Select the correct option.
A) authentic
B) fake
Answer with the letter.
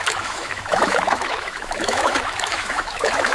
B